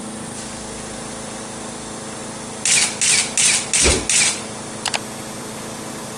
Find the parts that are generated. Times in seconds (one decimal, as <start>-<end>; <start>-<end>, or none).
none